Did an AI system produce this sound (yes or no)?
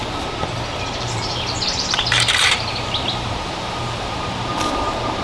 yes